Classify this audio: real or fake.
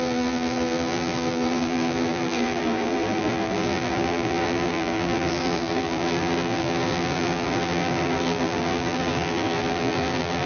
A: fake